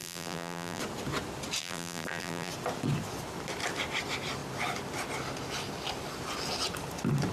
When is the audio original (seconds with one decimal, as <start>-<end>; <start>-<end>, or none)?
0.8-1.6; 2.5-7.3